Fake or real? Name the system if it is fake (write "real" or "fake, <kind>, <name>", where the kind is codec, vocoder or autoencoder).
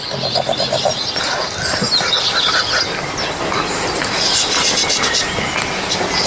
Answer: real